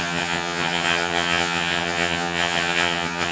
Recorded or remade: remade